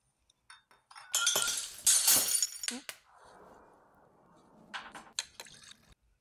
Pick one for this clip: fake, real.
real